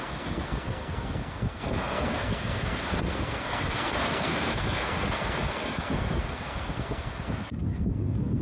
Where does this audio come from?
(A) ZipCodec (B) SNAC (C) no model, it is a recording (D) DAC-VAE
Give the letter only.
B